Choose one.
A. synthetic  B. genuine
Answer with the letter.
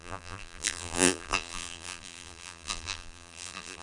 A